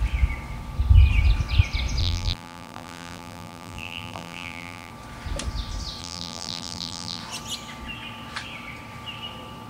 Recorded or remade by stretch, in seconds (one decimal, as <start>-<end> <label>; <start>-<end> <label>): 0.0-2.0 recorded; 2.0-4.9 remade; 4.9-6.0 recorded; 6.0-7.2 remade; 7.2-9.7 recorded